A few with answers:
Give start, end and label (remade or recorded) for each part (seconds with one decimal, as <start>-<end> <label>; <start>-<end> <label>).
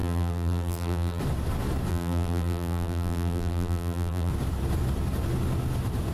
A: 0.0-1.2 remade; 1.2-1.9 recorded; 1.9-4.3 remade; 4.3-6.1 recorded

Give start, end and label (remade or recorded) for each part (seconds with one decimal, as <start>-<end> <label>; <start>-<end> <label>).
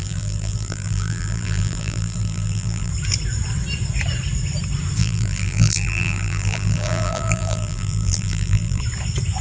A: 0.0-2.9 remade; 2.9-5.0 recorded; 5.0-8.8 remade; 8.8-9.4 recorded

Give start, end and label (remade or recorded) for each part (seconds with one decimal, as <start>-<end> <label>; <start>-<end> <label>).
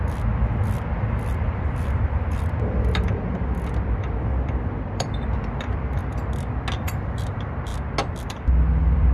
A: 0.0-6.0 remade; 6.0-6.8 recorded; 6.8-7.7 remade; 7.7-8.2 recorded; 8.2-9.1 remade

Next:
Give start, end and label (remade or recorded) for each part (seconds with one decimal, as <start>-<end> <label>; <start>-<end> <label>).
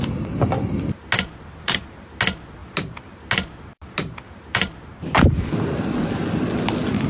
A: 0.0-7.1 recorded